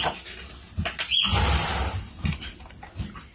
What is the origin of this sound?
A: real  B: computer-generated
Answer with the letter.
A